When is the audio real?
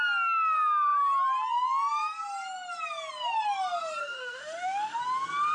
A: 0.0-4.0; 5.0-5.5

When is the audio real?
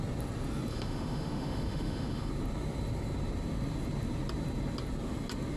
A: 0.0-0.7; 2.3-5.6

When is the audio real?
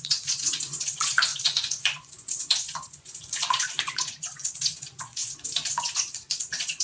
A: none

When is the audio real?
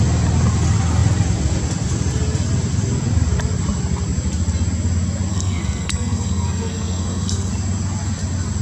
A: 0.0-5.3; 7.5-8.6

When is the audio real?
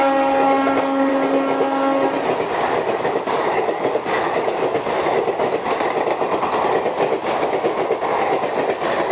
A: 1.1-2.7; 4.8-9.1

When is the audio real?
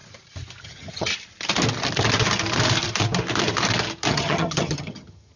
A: 0.0-0.6; 1.1-4.1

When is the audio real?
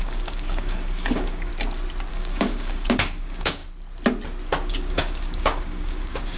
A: 1.5-2.1; 3.6-4.7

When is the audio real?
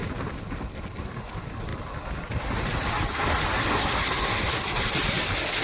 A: 0.0-5.6